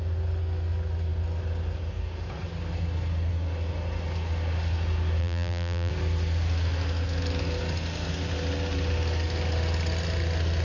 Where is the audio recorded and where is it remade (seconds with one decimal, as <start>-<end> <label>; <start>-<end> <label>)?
0.0-5.2 recorded; 5.2-5.9 remade; 5.9-10.6 recorded